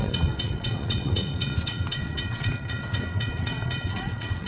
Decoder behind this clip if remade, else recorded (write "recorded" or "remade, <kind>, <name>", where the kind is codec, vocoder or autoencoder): remade, vocoder, WaveNeXt